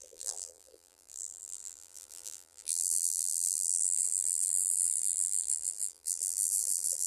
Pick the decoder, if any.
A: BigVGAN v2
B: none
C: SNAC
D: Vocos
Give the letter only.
A